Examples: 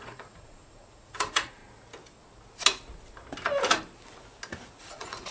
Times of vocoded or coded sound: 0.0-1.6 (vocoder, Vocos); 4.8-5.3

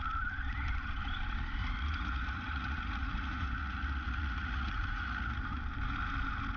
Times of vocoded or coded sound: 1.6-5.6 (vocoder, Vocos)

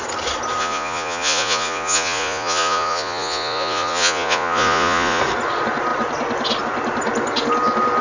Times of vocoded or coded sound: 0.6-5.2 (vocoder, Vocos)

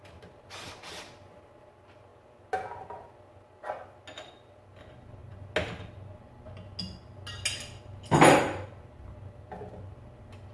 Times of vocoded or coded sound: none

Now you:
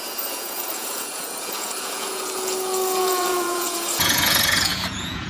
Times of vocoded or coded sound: 0.0-5.3 (vocoder, Vocos)

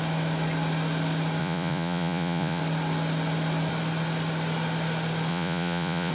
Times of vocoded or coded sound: 1.4-2.6 (vocoder, Vocos); 5.3-6.1

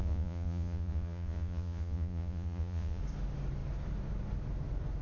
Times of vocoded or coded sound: 0.0-3.0 (vocoder, Vocos)

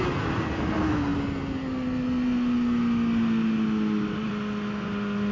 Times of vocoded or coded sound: none